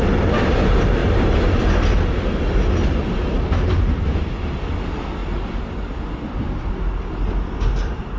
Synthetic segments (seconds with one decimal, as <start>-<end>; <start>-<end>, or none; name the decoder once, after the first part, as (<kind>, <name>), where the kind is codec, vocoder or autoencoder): none